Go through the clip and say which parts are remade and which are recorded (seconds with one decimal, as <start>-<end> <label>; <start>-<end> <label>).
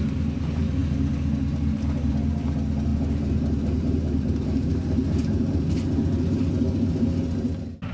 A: 0.0-2.9 recorded; 2.9-5.7 remade; 5.7-7.9 recorded